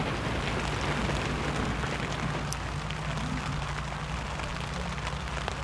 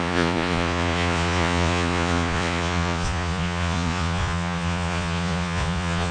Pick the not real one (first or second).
second